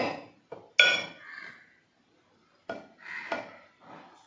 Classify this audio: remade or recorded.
recorded